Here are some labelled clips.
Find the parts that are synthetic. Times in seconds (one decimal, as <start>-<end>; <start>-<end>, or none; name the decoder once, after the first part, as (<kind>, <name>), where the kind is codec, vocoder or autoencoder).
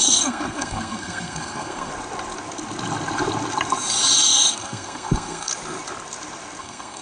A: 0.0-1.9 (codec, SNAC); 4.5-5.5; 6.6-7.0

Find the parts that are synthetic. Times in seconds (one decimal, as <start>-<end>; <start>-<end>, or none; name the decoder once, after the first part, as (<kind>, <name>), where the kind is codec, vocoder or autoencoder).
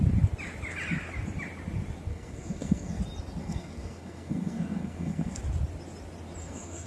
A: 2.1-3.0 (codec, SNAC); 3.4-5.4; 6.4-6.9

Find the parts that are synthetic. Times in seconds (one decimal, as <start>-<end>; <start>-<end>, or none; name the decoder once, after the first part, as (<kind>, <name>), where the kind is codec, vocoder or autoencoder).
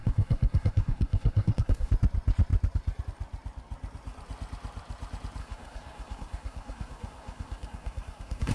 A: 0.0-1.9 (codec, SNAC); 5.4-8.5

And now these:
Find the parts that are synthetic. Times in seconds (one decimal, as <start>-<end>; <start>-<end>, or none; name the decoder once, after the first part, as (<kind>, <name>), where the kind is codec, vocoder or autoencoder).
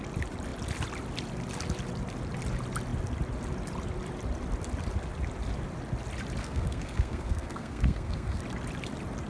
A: 6.4-8.4 (codec, SNAC)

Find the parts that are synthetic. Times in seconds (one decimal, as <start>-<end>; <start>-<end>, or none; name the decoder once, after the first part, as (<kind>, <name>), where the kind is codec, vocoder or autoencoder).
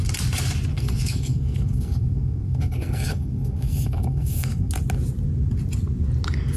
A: 0.7-4.7 (codec, SNAC)